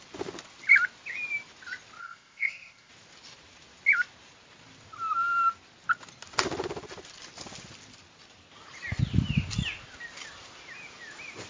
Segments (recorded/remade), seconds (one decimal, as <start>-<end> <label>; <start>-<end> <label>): 0.0-2.0 recorded; 2.0-2.9 remade; 2.9-11.5 recorded